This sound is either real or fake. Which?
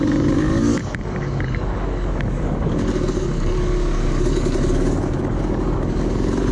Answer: fake